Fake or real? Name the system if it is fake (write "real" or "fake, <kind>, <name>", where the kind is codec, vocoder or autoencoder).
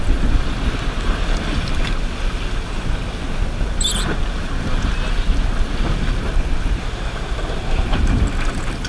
real